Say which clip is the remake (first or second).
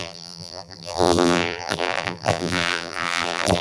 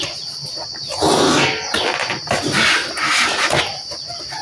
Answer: first